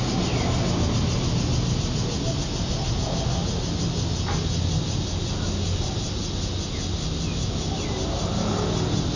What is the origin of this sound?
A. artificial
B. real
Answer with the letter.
B